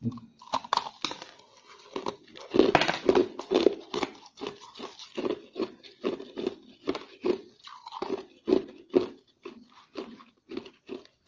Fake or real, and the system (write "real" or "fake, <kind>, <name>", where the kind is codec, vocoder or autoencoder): real